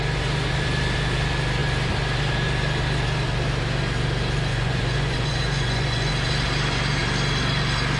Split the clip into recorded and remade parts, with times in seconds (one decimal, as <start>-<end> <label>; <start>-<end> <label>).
0.0-4.5 recorded; 4.5-6.1 remade; 6.1-8.0 recorded